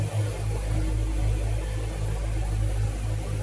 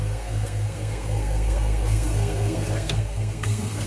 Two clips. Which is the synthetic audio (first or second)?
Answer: second